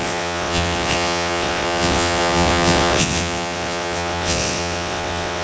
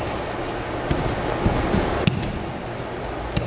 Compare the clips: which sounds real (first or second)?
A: second